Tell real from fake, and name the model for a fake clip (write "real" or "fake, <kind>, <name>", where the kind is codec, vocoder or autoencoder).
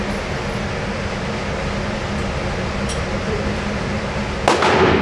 real